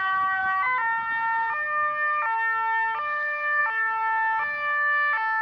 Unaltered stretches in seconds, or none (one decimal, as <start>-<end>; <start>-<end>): 0.0-5.4